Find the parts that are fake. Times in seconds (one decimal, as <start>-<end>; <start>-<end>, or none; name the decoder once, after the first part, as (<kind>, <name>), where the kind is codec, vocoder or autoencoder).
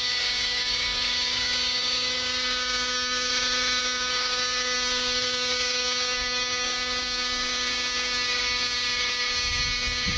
0.0-3.3 (codec, DAC); 3.8-10.2